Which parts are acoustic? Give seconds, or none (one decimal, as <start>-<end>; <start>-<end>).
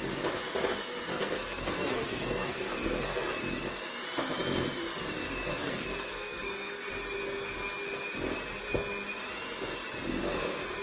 0.0-1.1; 3.3-5.5; 6.9-10.8